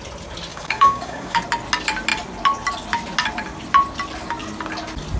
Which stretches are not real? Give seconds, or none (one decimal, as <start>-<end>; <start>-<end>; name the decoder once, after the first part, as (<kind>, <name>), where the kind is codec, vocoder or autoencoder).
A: 0.5-1.4 (codec, DAC)